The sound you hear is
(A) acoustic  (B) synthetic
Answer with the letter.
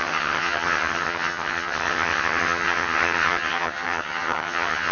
B